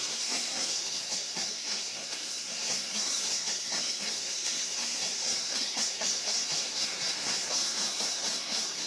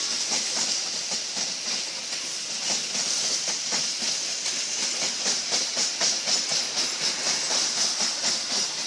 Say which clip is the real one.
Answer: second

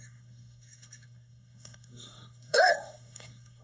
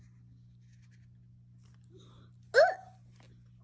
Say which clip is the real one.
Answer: second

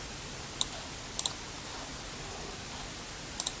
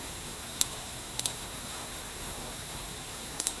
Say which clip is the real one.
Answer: first